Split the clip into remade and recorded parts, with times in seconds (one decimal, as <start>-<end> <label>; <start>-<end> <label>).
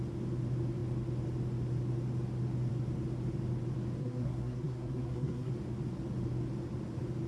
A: 0.0-4.0 recorded; 4.0-5.5 remade; 5.5-7.3 recorded